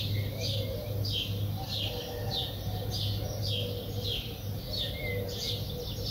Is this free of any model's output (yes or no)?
yes